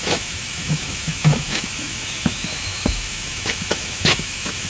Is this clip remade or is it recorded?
remade